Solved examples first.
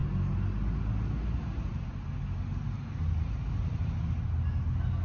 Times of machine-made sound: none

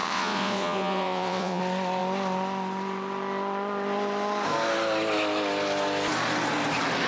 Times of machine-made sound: 0.0-1.6 (vocoder, WaveNeXt)

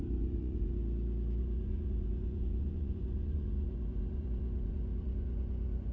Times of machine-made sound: 0.0-0.8 (vocoder, Vocos); 1.4-5.9

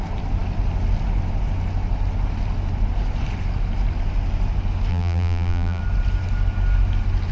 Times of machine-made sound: 4.9-5.8 (vocoder, BigVGAN v2)

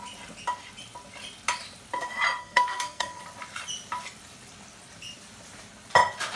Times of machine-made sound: 2.4-3.2 (codec, SNAC)

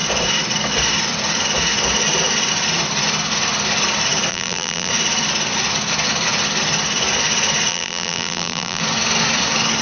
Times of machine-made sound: 4.3-4.9 (vocoder, BigVGAN v2); 7.7-8.8

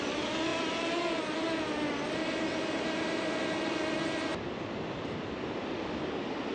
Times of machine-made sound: none